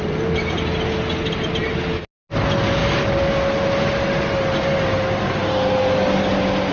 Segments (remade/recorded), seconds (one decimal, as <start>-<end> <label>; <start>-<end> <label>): 0.0-6.7 recorded